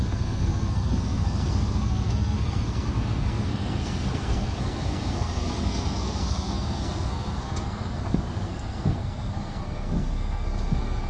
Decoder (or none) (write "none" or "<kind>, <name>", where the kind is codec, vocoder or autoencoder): codec, SNAC